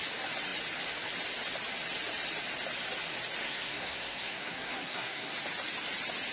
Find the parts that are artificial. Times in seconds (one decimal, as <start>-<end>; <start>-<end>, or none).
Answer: 3.4-5.3